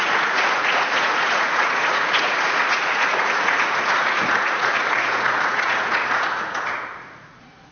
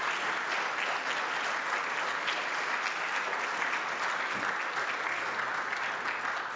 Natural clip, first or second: second